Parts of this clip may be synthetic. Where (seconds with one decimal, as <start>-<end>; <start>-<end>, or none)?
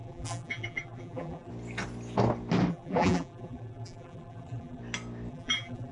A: 0.0-1.5; 2.7-4.8; 5.3-5.9